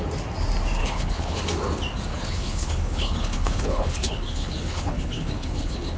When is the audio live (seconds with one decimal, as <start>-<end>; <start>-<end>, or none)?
0.0-0.8; 1.4-2.1